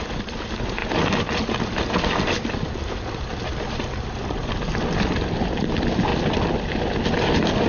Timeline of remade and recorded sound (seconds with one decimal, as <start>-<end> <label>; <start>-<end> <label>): 0.0-7.7 recorded